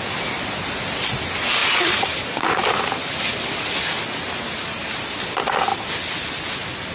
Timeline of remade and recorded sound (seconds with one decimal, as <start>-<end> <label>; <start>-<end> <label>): 0.0-1.6 recorded; 1.6-2.9 remade; 2.9-6.9 recorded